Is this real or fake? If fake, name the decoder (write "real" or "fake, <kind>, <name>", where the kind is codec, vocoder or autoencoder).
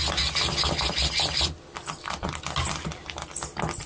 real